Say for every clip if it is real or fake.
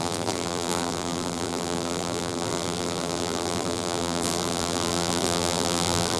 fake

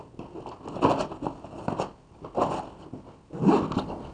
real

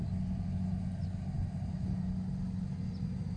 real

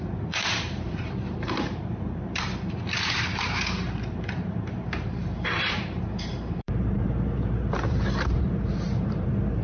fake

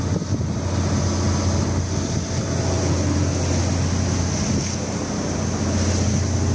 real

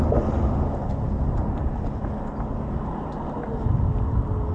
real